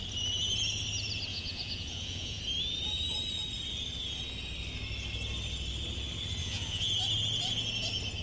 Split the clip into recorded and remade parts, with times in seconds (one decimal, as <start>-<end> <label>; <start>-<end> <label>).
0.0-1.3 recorded; 1.3-2.4 remade; 2.4-6.4 recorded; 6.4-6.9 remade; 6.9-8.2 recorded